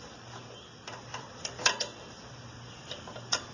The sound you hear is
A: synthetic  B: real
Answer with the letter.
A